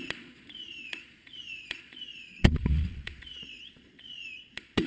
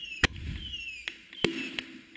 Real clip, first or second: second